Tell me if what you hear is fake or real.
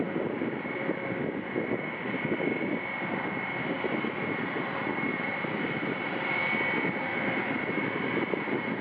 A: real